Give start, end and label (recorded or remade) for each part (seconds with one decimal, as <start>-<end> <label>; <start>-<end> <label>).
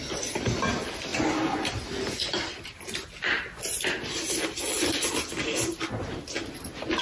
0.0-7.0 recorded